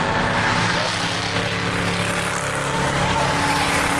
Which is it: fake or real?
real